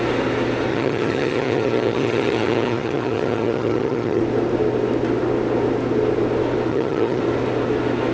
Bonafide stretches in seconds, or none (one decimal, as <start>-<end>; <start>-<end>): 0.0-0.7; 4.2-6.7; 7.2-8.1